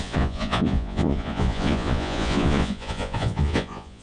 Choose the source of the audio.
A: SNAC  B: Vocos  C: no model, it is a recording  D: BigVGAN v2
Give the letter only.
B